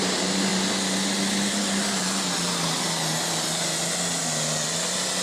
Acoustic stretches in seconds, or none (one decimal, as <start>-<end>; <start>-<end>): 0.0-5.2